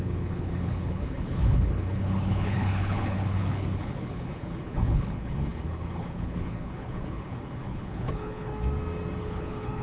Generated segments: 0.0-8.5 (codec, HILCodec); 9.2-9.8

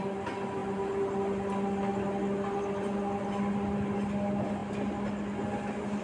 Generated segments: none

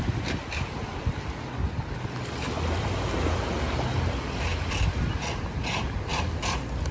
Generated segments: none

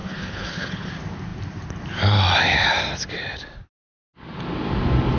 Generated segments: 0.0-0.9 (codec, HILCodec)

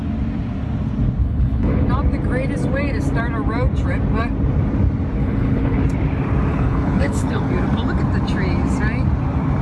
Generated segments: 1.2-1.9 (codec, HILCodec); 5.2-5.8; 6.5-7.5

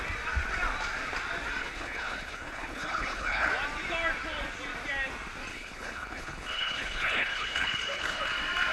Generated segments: 1.6-3.5 (codec, HILCodec); 5.5-8.2